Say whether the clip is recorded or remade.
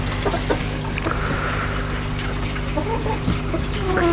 recorded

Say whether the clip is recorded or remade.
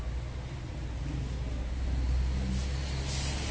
recorded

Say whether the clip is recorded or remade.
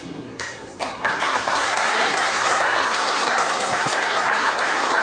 remade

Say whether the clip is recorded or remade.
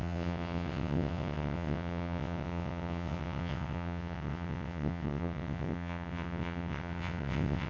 remade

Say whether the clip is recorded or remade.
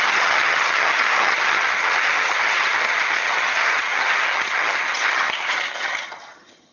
remade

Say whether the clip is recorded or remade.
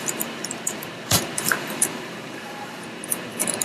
remade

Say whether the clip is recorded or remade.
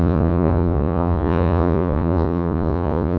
remade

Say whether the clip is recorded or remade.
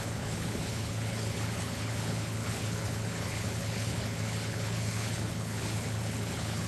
remade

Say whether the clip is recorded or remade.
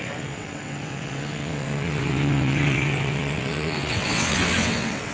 remade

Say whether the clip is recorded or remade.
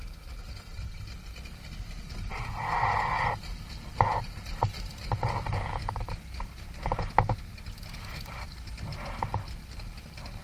recorded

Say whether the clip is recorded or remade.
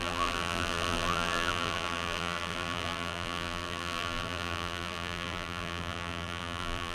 remade